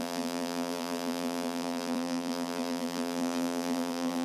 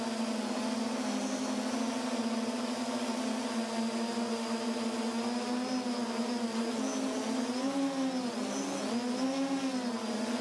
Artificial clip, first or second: first